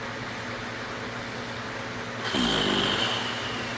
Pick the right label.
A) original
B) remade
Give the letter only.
A